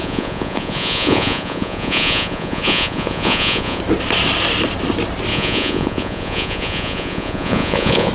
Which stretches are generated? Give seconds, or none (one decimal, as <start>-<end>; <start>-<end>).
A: 0.0-3.8; 5.3-8.1

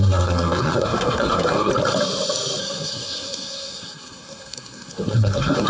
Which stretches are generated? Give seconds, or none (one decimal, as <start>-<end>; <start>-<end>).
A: 0.0-1.7; 2.6-5.7

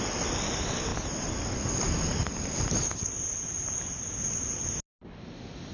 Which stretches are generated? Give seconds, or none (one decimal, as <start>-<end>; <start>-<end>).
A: none